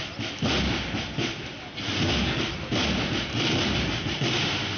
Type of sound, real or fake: real